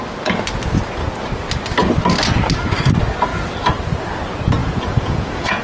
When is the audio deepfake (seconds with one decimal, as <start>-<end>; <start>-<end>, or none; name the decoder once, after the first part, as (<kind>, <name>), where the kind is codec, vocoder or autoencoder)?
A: 4.6-5.6 (vocoder, Vocos)